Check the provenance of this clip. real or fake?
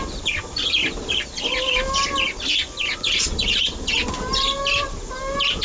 real